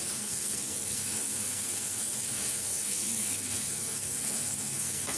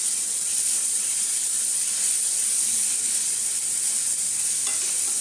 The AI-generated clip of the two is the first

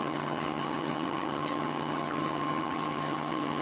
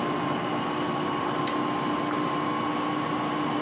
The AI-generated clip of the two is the first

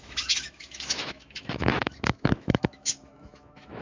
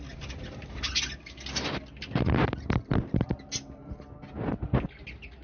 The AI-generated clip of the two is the first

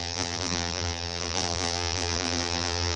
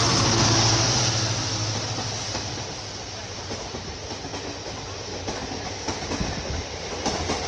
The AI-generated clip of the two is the first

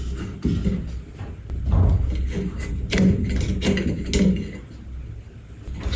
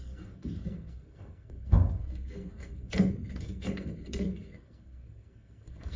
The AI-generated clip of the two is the second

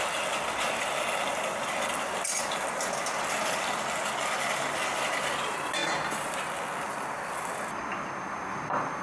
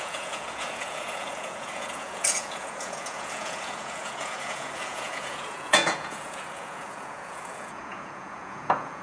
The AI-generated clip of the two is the second